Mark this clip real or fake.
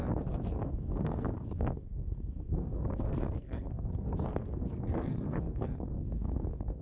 fake